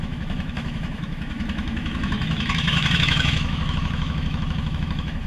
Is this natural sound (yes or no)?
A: no